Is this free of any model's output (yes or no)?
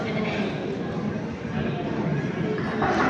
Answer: yes